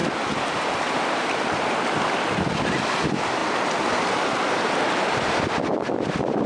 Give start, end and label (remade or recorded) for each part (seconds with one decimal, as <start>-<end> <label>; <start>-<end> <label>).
0.0-2.9 remade; 2.9-3.4 recorded; 3.4-4.1 remade; 4.1-6.5 recorded